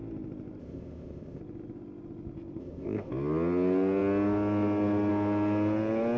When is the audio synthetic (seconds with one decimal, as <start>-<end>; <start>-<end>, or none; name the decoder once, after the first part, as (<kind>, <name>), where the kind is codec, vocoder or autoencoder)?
0.6-1.4 (codec, ZipCodec); 2.6-3.1